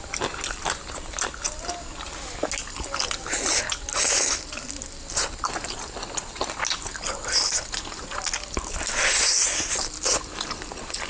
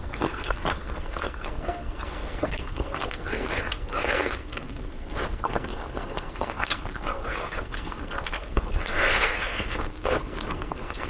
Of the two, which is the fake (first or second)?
second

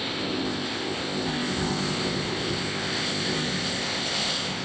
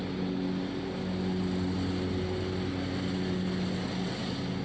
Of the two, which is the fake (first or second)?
first